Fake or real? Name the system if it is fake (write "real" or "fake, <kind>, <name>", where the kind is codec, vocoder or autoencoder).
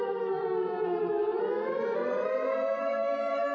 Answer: fake, codec, SNAC